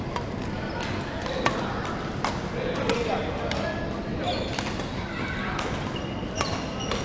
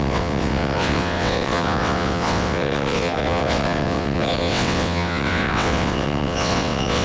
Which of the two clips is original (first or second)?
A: first